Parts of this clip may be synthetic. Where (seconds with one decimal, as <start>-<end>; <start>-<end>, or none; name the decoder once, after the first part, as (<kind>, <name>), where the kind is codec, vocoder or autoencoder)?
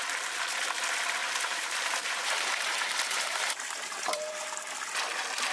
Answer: 1.2-4.5 (vocoder, BigVGAN v2)